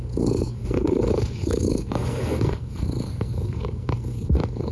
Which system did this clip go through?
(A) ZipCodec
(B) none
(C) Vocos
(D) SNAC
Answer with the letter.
D